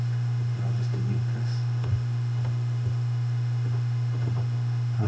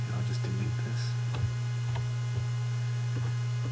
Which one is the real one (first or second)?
second